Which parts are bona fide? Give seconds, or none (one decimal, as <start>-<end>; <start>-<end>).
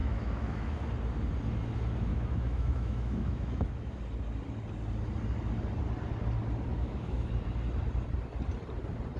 0.8-2.1; 4.0-6.7; 7.3-9.2